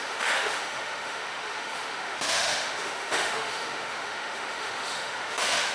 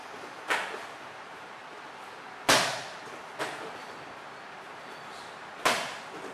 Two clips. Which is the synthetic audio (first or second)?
first